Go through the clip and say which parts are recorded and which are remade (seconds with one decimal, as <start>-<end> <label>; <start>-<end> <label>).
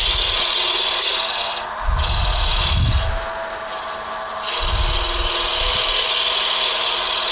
0.0-7.3 recorded